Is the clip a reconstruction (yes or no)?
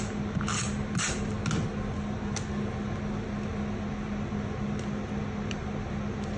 no